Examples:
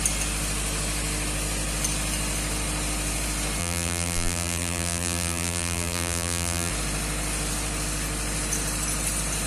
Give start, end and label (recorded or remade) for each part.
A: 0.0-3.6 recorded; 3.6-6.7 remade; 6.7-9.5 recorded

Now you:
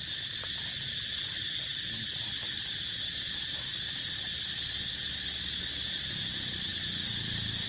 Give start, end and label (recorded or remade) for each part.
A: 0.0-4.3 remade; 4.3-5.0 recorded; 5.0-6.7 remade; 6.7-7.7 recorded

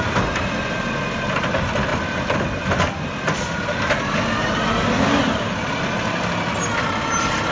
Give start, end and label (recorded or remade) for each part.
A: 0.0-7.5 recorded

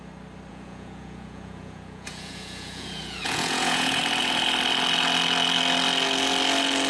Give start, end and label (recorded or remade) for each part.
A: 0.0-0.5 recorded; 0.5-4.0 remade; 4.0-6.9 recorded